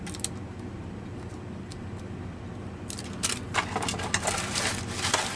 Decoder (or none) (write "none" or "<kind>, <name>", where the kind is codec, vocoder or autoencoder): none